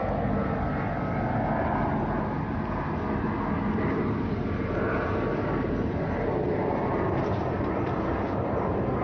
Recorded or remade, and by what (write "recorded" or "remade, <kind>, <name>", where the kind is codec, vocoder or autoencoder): recorded